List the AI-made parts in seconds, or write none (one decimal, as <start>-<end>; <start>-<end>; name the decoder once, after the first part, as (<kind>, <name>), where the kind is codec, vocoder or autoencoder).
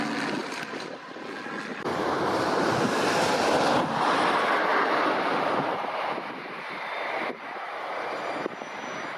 0.4-1.2 (vocoder, BigVGAN v2); 1.7-2.9; 4.7-7.7